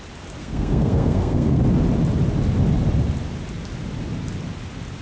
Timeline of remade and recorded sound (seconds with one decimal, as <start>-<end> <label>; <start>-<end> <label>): 0.0-0.4 recorded; 0.4-1.6 remade; 1.6-5.0 recorded

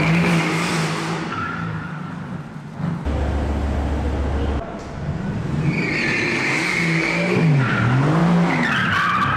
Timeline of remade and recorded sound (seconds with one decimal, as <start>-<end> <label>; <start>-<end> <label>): 0.0-0.8 remade; 0.8-1.3 recorded; 1.3-2.3 remade; 2.3-6.4 recorded; 6.4-8.2 remade; 8.2-9.4 recorded

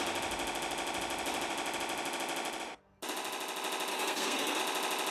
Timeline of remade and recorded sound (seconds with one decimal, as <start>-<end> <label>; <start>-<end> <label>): 0.0-3.9 recorded; 3.9-4.6 remade; 4.6-5.1 recorded

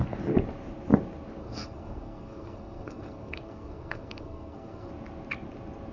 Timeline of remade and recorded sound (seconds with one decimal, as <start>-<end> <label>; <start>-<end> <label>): 0.0-1.4 recorded; 1.4-4.9 remade; 4.9-5.9 recorded

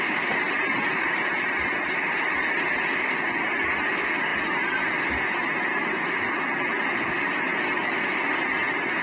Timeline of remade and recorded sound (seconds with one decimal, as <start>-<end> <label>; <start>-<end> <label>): 0.0-9.0 recorded

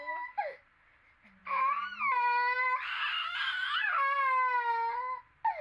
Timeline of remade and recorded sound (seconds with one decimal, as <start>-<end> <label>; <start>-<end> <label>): 0.0-5.6 recorded

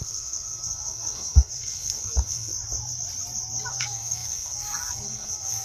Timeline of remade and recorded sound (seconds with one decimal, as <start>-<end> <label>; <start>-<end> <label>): 0.0-2.5 remade; 2.5-3.7 recorded; 3.7-5.6 remade